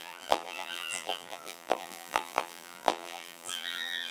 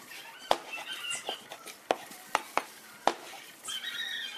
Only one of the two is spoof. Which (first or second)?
first